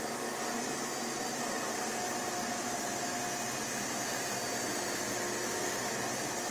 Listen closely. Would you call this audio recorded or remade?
recorded